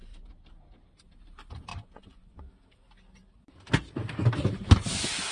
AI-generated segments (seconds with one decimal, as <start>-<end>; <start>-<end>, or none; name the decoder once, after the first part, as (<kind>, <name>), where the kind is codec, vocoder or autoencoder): 1.7-2.4 (vocoder, Vocos)